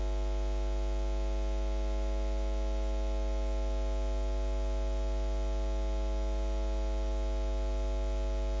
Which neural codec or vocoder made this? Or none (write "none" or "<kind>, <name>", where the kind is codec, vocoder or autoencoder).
none